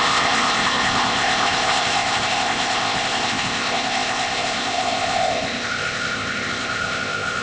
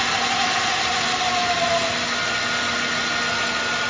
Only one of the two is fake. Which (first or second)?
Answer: first